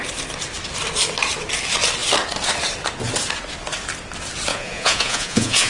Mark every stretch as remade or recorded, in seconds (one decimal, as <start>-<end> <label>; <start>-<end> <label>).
0.0-4.5 recorded; 4.5-5.7 remade